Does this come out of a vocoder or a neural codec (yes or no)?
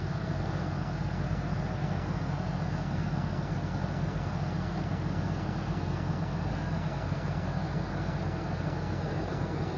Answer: yes